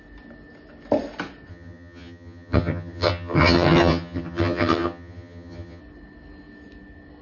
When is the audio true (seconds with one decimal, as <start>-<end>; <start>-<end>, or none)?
0.0-1.5; 5.8-7.2